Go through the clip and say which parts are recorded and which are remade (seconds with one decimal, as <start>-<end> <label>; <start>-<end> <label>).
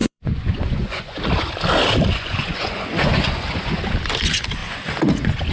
0.0-1.2 remade; 1.2-2.1 recorded; 2.1-3.8 remade; 3.8-4.6 recorded; 4.6-5.5 remade